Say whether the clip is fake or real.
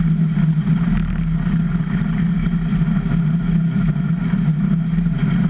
real